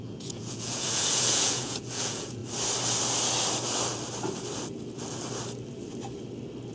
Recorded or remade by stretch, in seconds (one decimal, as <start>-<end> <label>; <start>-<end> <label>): 0.0-2.4 remade; 2.4-6.7 recorded